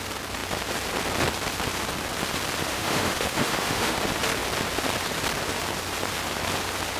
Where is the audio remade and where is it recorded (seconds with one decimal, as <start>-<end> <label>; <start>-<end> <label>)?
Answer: 0.0-2.6 recorded; 2.6-4.0 remade; 4.0-7.0 recorded